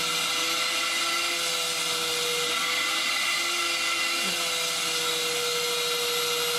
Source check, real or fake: real